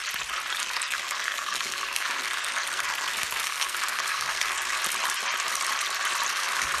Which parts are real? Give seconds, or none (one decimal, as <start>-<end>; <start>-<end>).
0.0-0.6; 4.8-6.3